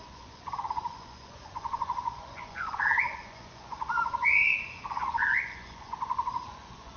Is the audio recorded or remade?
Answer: remade